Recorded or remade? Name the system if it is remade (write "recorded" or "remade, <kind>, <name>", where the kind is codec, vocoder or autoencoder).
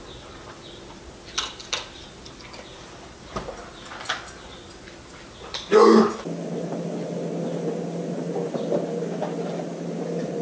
recorded